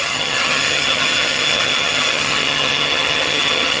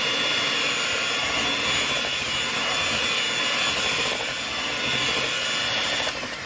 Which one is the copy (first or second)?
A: first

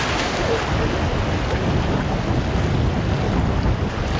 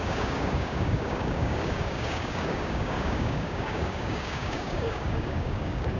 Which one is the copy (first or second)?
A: second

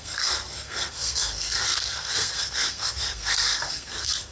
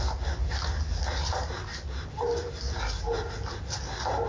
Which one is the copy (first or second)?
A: first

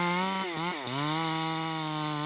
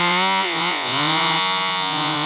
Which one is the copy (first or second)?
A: second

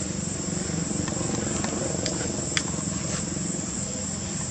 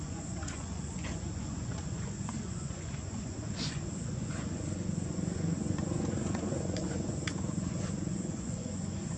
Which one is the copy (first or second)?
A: second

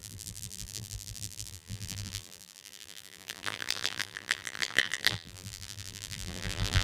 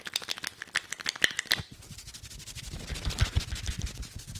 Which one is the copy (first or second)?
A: first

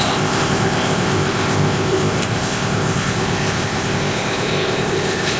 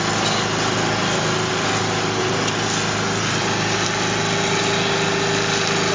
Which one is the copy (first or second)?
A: first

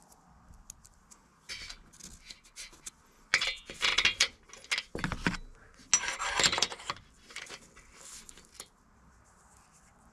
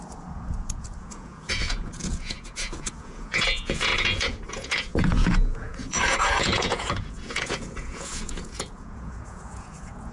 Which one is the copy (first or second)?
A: second